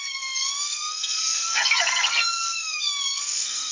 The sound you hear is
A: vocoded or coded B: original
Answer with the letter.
A